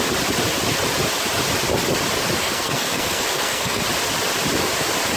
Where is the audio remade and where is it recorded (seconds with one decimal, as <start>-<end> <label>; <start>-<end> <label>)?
0.0-2.4 recorded; 2.4-3.8 remade; 3.8-5.2 recorded